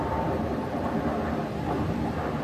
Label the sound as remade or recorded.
remade